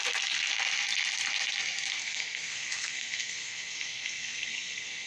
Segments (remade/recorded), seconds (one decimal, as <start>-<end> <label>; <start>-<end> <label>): 0.0-2.0 recorded; 2.0-5.1 remade